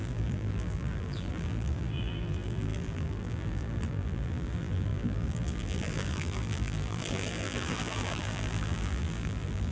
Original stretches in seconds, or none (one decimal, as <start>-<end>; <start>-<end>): none